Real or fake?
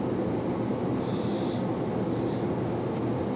real